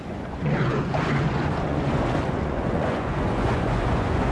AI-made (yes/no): yes